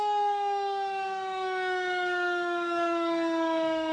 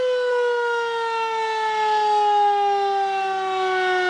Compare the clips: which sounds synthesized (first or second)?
first